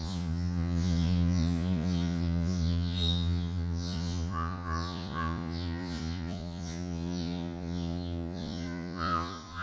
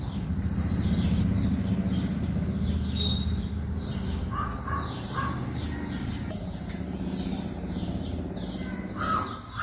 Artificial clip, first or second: first